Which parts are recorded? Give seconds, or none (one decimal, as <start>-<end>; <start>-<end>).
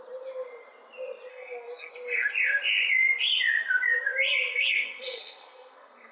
0.0-1.3; 1.9-4.5